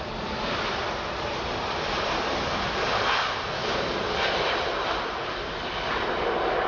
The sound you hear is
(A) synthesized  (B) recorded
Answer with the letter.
B